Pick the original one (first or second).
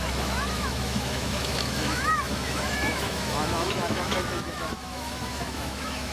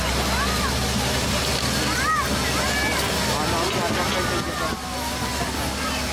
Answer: second